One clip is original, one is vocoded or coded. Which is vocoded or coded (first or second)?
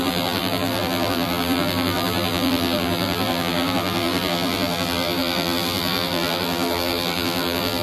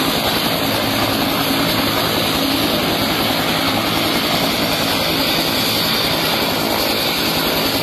first